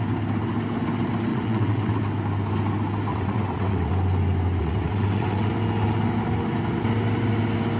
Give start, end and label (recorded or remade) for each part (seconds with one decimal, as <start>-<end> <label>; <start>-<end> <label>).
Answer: 0.0-1.3 recorded; 1.3-2.0 remade; 2.0-3.1 recorded; 3.1-3.9 remade; 3.9-4.6 recorded; 4.6-5.5 remade; 5.5-7.8 recorded